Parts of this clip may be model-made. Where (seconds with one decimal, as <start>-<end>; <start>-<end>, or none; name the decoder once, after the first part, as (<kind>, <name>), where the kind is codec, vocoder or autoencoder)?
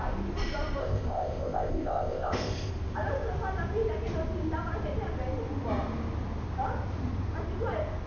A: 0.8-2.7 (codec, ZipCodec)